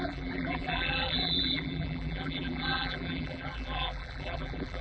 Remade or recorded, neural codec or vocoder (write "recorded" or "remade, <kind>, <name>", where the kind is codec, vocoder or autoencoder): remade, vocoder, BigVGAN v2